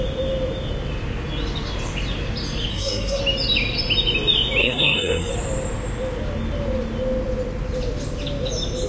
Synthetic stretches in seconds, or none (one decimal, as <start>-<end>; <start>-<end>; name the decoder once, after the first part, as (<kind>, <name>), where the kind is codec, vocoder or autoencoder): 2.7-3.2 (codec, SNAC); 4.6-5.3